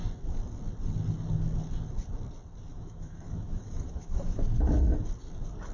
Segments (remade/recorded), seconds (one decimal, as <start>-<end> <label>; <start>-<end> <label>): 0.0-2.7 recorded; 2.7-4.4 remade; 4.4-5.7 recorded